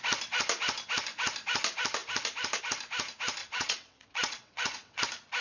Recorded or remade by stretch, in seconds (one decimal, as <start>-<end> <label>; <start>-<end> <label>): 0.0-3.4 recorded; 3.4-5.0 remade; 5.0-5.4 recorded